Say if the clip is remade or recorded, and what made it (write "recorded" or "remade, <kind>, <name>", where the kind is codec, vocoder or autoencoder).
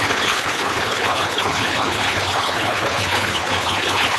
remade, codec, HILCodec